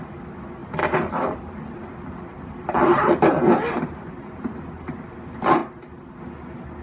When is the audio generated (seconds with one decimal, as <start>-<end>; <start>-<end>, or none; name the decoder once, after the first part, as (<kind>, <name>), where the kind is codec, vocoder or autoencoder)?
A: 0.6-4.4 (vocoder, BigVGAN v2); 5.6-6.2